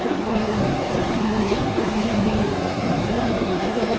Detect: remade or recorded remade